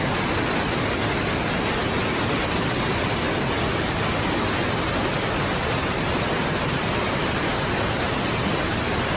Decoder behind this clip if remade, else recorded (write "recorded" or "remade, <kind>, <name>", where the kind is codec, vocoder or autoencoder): recorded